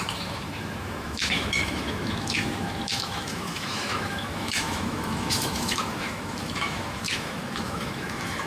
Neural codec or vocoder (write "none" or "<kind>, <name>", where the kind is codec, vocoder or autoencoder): autoencoder, DAC-VAE